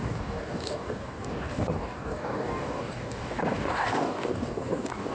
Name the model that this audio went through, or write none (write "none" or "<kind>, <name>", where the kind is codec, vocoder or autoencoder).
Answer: codec, DAC